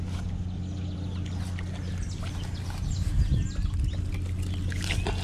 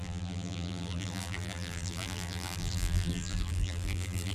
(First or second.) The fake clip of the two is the second